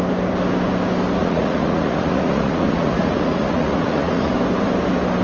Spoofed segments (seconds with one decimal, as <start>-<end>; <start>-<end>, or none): 1.2-4.3